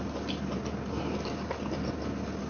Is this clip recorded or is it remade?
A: recorded